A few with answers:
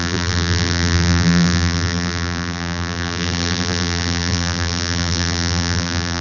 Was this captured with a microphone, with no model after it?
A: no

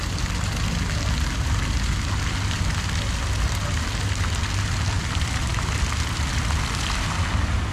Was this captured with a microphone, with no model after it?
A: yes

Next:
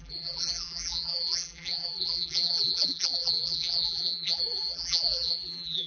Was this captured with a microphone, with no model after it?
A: no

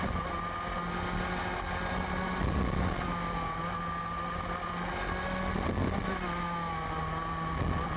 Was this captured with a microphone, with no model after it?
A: yes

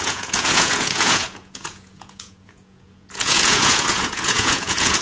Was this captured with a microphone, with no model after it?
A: no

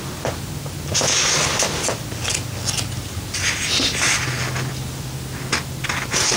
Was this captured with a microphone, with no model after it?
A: yes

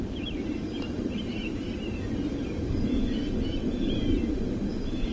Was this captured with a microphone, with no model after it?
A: no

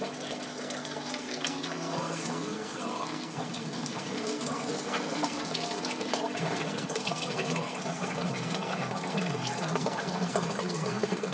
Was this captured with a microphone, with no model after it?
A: no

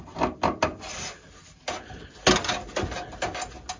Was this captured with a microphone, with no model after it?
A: yes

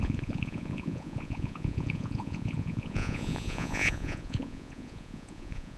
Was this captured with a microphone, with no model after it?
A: no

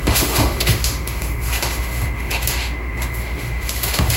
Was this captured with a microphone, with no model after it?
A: no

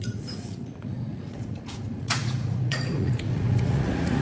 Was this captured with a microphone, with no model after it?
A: no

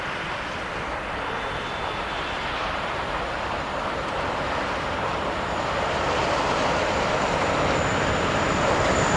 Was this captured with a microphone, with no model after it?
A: no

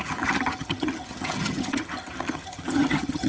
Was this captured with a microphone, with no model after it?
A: no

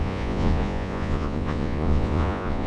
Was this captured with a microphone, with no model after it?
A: no